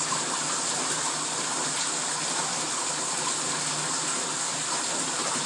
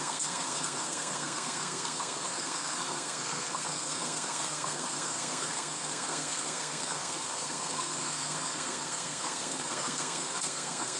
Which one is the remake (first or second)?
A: second